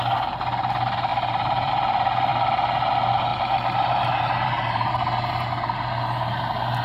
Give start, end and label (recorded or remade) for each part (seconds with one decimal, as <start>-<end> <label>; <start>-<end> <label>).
0.0-1.1 recorded; 1.1-1.7 remade; 1.7-3.3 recorded; 3.3-4.9 remade; 4.9-6.8 recorded

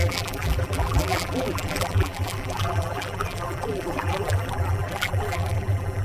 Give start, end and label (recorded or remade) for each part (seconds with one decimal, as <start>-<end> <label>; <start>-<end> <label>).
0.0-6.0 remade

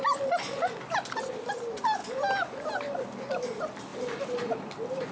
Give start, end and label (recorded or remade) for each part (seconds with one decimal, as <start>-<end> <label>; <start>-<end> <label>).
0.0-5.1 recorded

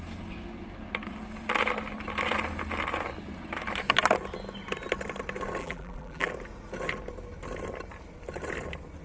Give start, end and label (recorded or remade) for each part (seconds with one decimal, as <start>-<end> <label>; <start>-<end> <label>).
0.0-5.6 recorded; 5.6-6.3 remade; 6.3-9.0 recorded

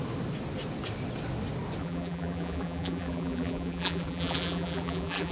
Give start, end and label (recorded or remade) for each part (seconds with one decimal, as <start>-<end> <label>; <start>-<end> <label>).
0.0-1.8 recorded; 1.8-5.3 remade

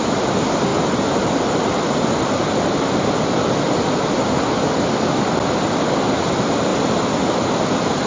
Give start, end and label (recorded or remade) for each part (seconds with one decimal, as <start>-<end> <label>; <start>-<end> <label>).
0.0-0.7 remade; 0.7-1.6 recorded; 1.6-6.7 remade; 6.7-7.3 recorded; 7.3-8.1 remade